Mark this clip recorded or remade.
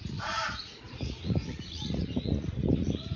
remade